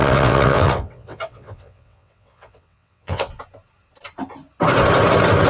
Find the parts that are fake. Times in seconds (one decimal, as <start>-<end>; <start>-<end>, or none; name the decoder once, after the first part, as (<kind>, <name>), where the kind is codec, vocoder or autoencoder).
0.0-3.3 (vocoder, WaveNeXt)